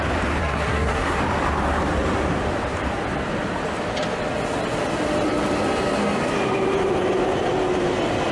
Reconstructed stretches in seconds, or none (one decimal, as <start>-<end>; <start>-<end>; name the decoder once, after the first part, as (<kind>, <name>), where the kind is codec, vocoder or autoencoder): 0.4-1.2 (codec, SNAC)